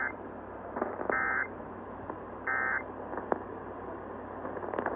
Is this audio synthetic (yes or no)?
no